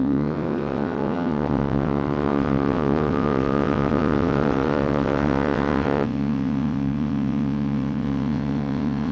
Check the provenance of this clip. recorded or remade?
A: remade